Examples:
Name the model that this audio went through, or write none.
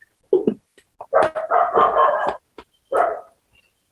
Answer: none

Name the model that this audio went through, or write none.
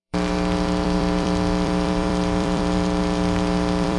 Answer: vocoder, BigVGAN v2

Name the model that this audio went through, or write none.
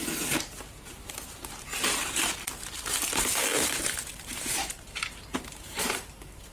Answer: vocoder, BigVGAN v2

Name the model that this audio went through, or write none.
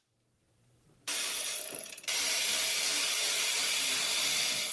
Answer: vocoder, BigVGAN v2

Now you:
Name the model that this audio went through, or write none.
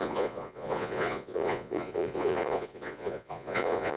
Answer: vocoder, Vocos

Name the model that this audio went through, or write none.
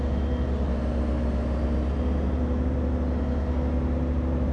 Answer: none